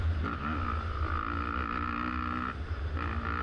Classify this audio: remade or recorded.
recorded